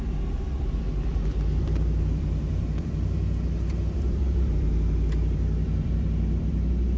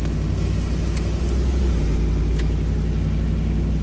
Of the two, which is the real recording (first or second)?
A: second